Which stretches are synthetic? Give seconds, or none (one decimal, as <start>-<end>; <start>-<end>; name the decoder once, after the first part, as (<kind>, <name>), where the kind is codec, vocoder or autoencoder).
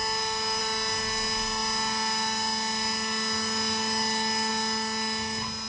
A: none